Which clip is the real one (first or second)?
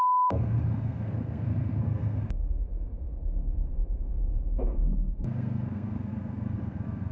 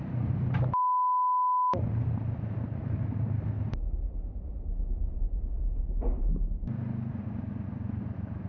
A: second